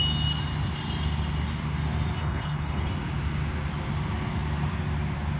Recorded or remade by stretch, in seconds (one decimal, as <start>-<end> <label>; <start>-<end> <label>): 0.0-2.2 recorded; 2.2-2.9 remade; 2.9-5.4 recorded